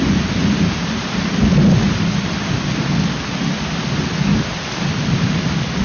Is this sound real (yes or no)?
yes